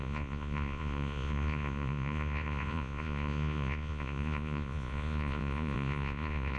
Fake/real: fake